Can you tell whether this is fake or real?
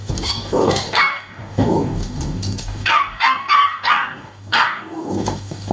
fake